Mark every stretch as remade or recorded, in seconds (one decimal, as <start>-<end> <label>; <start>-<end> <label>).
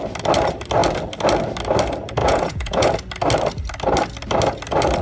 0.0-2.2 recorded; 2.2-2.9 remade; 2.9-5.0 recorded